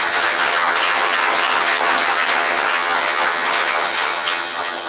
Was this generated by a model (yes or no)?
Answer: yes